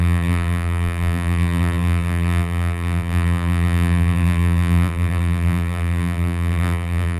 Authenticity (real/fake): fake